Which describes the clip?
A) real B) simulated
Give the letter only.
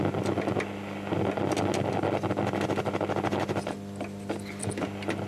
A